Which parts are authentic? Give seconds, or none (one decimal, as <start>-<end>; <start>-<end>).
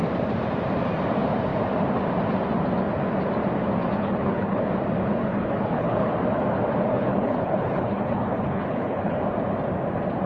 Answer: 0.0-4.0; 4.6-5.1; 6.1-6.9; 9.2-10.3